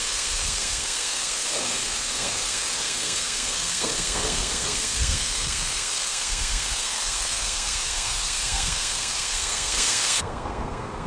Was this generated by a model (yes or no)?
yes